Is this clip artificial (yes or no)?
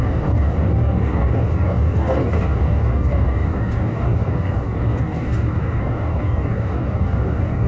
yes